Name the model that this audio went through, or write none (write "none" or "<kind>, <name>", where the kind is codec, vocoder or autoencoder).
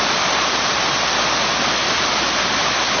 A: none